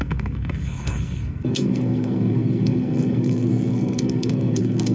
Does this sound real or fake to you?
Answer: fake